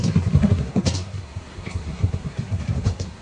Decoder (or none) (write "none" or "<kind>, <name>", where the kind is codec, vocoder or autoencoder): codec, SNAC